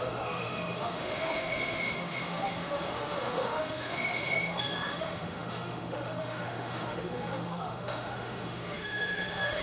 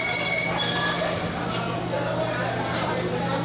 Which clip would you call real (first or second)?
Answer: second